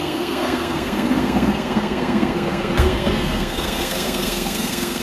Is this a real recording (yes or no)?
no